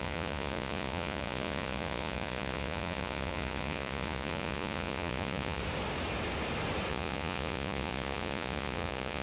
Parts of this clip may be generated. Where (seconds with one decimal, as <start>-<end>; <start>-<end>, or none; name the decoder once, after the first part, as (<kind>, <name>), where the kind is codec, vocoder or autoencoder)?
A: 0.0-5.6 (vocoder, Vocos); 6.9-9.2